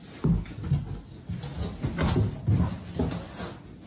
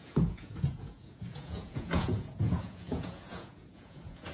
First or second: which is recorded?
first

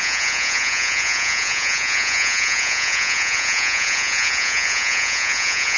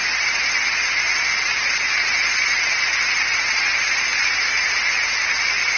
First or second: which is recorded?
second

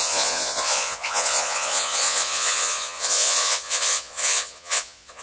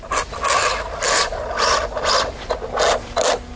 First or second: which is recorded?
second